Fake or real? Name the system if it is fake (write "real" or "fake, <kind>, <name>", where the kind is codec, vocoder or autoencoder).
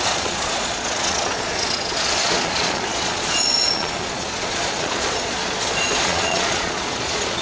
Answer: fake, vocoder, Vocos